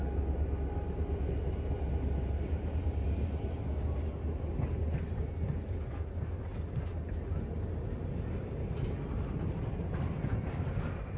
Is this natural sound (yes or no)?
yes